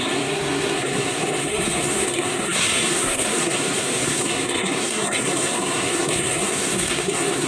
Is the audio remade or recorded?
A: remade